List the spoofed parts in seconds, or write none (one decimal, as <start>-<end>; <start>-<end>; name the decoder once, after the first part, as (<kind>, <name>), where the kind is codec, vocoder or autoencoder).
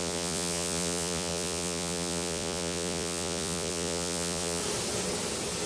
0.0-4.6 (vocoder, Vocos)